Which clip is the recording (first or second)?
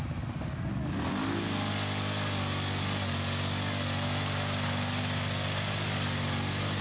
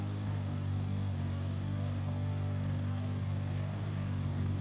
first